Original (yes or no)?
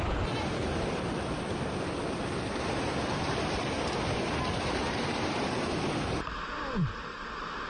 yes